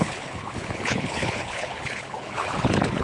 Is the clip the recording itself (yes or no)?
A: no